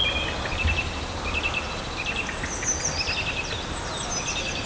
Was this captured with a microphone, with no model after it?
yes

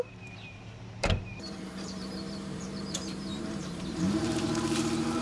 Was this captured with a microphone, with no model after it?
no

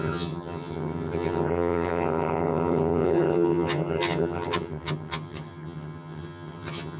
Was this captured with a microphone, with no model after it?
no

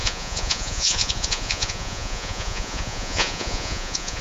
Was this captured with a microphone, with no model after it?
no